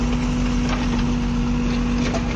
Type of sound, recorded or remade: recorded